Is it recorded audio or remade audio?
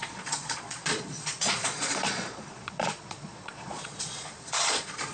remade